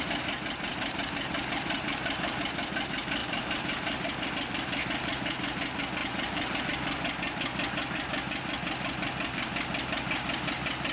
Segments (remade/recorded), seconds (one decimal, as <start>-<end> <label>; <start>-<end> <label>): 0.0-0.7 recorded; 0.7-2.4 remade; 2.4-3.2 recorded; 3.2-4.3 remade; 4.3-6.0 recorded; 6.0-6.6 remade; 6.6-10.9 recorded